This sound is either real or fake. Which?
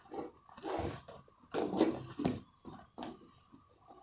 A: real